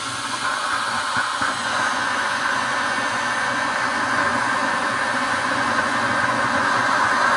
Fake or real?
fake